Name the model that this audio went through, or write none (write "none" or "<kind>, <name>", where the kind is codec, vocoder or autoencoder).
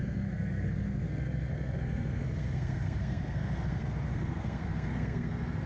codec, SNAC